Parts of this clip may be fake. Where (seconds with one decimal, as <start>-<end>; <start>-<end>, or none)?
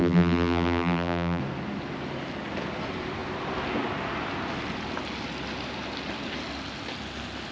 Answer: 0.0-1.4